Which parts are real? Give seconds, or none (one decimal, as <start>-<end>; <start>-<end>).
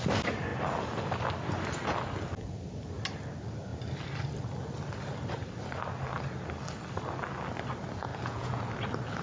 0.0-8.1; 8.6-9.2